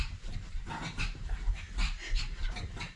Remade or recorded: remade